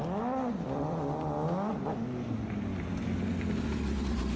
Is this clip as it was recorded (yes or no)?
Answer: yes